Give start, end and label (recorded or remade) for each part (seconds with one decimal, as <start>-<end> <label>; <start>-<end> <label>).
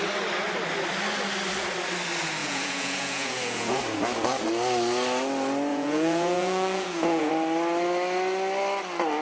0.0-2.4 recorded; 2.4-3.8 remade; 3.8-5.7 recorded; 5.7-7.3 remade; 7.3-9.2 recorded